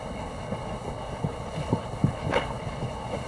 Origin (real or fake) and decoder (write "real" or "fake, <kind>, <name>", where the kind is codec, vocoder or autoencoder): fake, codec, HILCodec